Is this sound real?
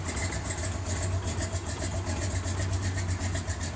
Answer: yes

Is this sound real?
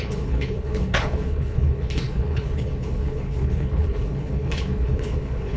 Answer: no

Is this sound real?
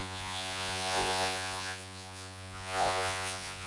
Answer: no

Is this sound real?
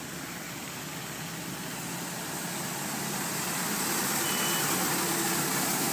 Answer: yes